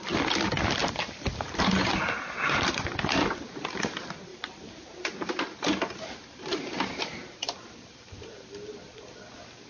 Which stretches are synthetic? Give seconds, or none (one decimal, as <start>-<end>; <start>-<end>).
0.8-1.9; 4.3-6.8